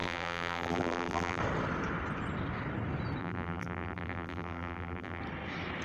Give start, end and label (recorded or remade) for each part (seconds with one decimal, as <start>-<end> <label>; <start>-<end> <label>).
0.0-1.4 remade; 1.4-3.2 recorded; 3.2-5.2 remade; 5.2-5.8 recorded